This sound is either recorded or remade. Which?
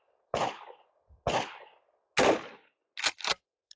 recorded